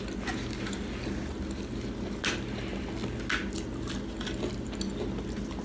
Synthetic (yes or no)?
no